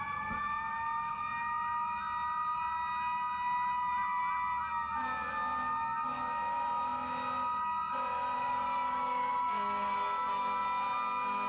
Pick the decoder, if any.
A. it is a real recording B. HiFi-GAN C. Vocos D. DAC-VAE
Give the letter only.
A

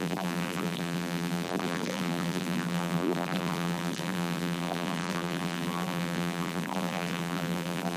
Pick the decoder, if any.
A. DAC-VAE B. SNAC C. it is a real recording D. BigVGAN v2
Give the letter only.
D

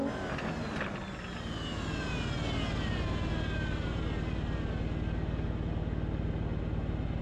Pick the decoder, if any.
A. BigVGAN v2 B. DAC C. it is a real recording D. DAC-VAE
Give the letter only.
C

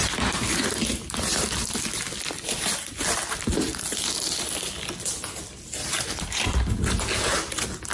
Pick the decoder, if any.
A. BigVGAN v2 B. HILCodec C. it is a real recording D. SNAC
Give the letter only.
C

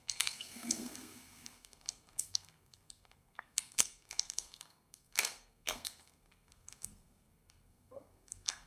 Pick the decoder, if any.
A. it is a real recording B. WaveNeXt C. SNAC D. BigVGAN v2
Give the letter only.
C